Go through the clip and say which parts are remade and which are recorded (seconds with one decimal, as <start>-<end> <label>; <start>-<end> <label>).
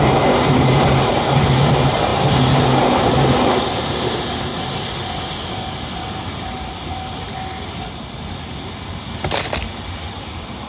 0.0-10.7 recorded